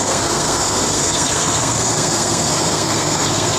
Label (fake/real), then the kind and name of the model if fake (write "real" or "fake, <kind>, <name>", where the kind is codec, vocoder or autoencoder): fake, codec, SNAC